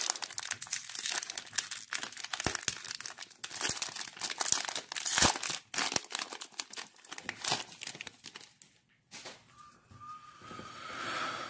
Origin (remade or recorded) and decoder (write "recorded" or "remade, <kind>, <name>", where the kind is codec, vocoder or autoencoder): recorded